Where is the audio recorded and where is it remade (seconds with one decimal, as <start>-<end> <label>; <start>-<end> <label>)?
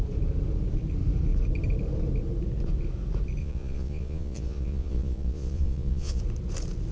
0.0-3.4 recorded; 3.4-6.2 remade; 6.2-6.9 recorded